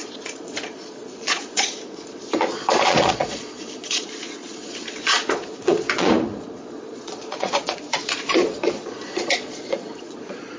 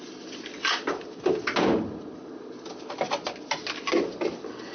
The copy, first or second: first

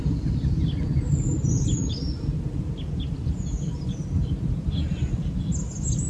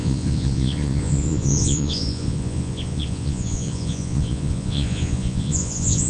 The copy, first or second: second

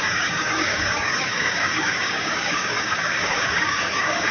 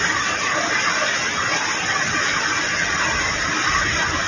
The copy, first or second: first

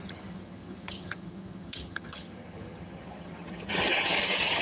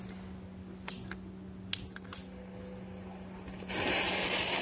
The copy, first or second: first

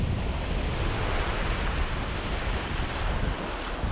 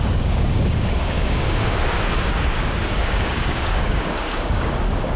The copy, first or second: second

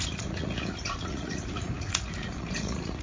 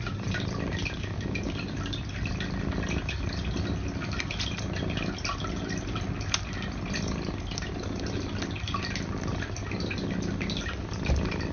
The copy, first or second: first